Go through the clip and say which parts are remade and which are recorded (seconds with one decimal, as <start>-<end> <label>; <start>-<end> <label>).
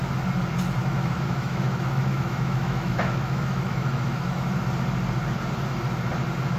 0.0-0.8 recorded; 0.8-4.6 remade; 4.6-6.6 recorded